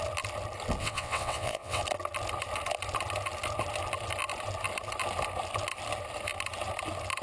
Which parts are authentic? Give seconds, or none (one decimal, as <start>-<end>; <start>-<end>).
0.0-0.8; 1.8-7.2